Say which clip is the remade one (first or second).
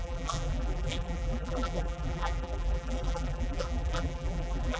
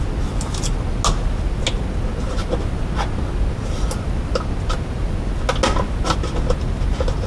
first